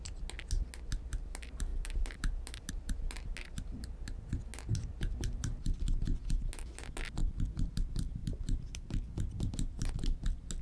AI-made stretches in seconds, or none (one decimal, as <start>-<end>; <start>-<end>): 1.7-2.7; 7.2-7.7; 8.2-9.5